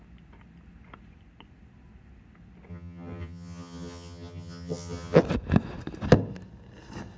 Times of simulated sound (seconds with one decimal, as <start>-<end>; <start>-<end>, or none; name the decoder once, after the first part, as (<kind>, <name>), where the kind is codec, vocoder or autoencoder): 2.7-5.2 (vocoder, HiFi-GAN)